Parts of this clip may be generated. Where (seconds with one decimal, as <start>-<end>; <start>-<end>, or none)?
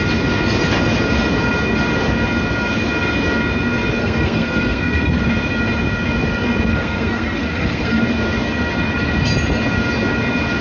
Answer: 4.0-5.2; 6.7-8.0